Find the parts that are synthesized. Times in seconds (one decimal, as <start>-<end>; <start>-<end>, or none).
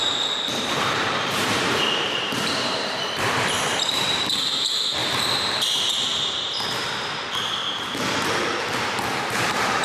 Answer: 0.0-7.6; 9.1-9.8